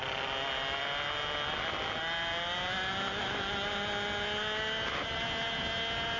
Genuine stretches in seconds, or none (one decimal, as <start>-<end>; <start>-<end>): 0.0-6.2